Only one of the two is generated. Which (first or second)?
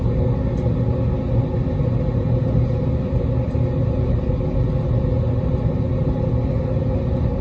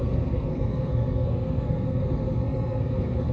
second